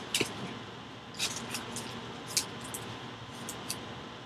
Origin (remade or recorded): recorded